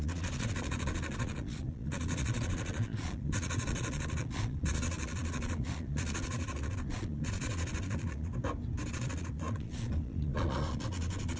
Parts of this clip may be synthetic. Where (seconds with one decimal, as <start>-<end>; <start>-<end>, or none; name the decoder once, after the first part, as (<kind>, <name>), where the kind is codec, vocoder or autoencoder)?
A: 0.0-8.3 (vocoder, Vocos); 8.9-11.4